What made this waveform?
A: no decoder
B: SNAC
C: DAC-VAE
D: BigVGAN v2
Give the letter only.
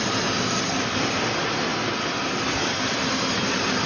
A